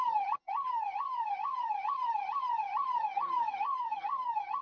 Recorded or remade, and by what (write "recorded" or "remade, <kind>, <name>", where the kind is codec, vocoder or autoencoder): remade, vocoder, HiFi-GAN